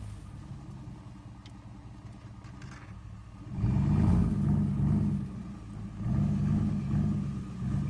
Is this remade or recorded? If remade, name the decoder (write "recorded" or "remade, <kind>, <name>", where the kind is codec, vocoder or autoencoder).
recorded